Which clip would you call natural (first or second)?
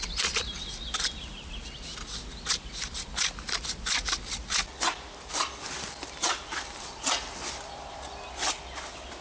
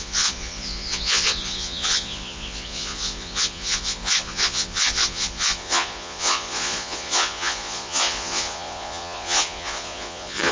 first